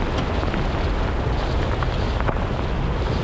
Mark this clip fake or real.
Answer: real